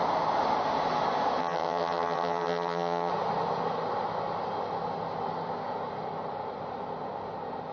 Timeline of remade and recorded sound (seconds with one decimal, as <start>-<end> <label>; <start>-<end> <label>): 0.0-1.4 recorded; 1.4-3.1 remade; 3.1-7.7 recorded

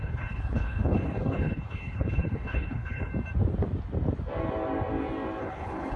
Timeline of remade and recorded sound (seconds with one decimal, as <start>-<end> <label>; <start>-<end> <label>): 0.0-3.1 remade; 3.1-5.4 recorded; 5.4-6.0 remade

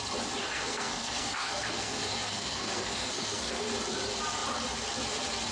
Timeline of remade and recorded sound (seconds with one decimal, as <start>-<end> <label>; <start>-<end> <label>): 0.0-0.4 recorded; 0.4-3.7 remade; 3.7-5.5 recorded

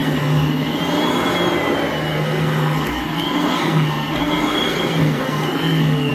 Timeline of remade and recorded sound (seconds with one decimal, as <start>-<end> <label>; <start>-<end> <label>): 0.0-0.8 remade; 0.8-2.1 recorded; 2.1-6.1 remade

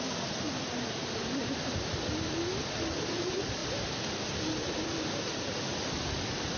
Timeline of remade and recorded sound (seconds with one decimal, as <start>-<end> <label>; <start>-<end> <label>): 0.0-6.6 recorded